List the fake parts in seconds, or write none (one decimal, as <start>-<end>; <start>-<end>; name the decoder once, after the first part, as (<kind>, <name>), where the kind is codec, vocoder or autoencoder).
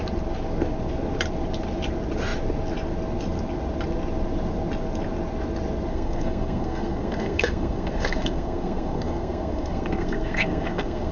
5.9-11.1 (codec, SNAC)